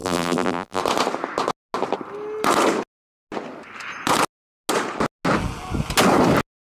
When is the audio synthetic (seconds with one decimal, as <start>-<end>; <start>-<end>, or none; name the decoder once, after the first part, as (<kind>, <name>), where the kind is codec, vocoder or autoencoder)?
0.0-0.8 (vocoder, BigVGAN v2)